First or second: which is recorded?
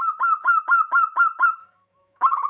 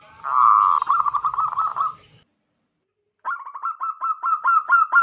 second